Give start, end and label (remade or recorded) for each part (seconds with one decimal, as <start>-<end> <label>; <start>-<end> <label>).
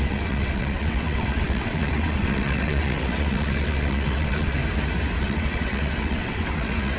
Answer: 0.0-4.6 remade; 4.6-5.2 recorded; 5.2-7.0 remade